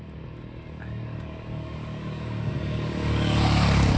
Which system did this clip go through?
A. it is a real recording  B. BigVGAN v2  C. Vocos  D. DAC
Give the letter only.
D